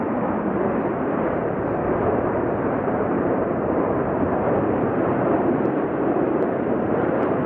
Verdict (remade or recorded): remade